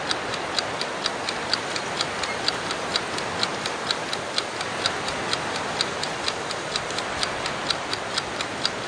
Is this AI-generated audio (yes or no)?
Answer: no